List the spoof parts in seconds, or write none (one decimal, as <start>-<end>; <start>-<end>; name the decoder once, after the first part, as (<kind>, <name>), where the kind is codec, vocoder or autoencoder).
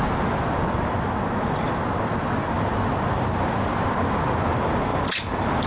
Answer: 4.9-5.7 (vocoder, BigVGAN v2)